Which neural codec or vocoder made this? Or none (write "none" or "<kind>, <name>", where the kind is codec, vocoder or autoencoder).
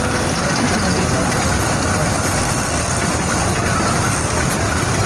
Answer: none